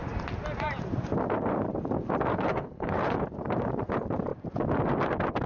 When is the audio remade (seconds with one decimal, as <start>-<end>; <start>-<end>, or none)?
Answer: 2.3-3.2